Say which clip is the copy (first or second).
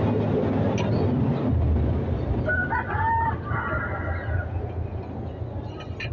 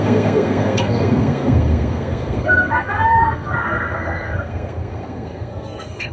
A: second